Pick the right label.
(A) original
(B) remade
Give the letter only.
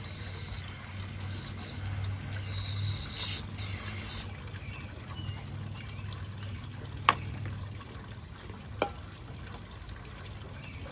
A